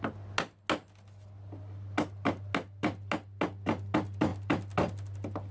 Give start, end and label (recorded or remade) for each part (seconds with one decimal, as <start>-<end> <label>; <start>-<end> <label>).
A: 0.0-5.5 recorded